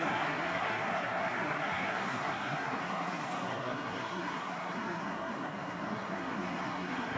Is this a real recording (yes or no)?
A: no